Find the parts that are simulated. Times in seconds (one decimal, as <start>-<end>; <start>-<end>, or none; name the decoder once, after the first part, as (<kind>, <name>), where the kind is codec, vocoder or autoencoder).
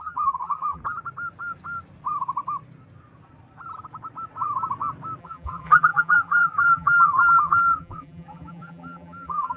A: 0.0-0.8 (vocoder, BigVGAN v2); 5.2-9.6